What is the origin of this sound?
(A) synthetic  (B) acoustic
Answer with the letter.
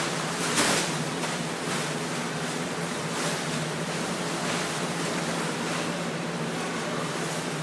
A